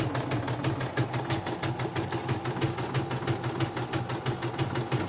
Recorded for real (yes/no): yes